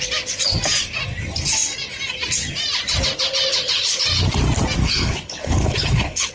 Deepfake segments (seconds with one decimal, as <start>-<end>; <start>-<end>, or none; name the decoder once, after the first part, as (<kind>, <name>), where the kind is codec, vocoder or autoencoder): 3.5-4.0 (codec, HILCodec); 4.8-6.3